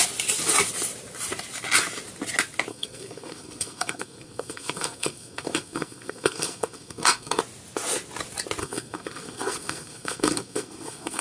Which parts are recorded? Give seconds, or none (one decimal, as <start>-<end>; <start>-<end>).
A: 0.0-2.7; 7.4-8.6